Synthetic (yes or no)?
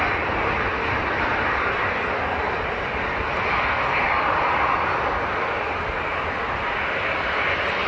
no